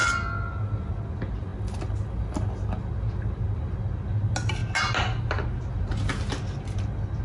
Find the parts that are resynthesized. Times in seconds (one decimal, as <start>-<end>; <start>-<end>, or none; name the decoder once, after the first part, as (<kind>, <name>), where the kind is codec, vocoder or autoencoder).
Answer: none